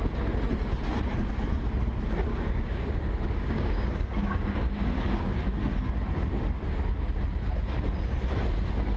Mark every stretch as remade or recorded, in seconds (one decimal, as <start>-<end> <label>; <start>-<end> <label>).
0.0-2.3 recorded; 2.3-5.4 remade; 5.4-9.0 recorded